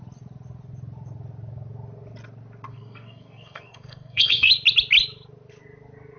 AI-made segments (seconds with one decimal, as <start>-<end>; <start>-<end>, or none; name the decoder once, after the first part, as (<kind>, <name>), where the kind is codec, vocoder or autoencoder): 2.7-4.5 (codec, SNAC)